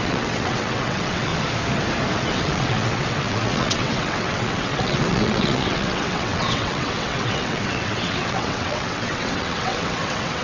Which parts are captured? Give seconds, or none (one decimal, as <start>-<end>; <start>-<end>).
1.3-2.1

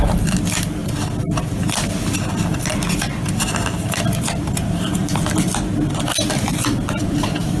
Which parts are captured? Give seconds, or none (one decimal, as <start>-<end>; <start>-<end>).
5.0-6.1

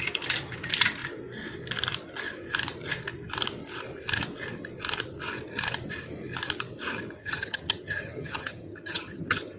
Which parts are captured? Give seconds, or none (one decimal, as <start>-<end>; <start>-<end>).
0.0-7.2

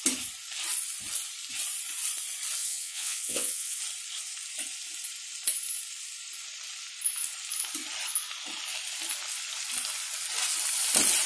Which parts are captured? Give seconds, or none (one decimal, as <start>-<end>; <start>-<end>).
0.0-2.6; 3.8-11.3